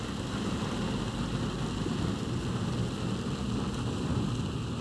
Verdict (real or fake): real